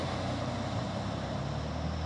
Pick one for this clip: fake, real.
real